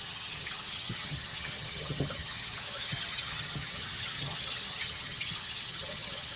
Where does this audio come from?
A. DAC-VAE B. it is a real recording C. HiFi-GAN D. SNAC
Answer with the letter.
C